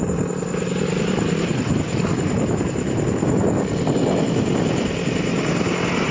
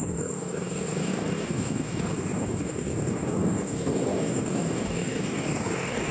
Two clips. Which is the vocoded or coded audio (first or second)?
second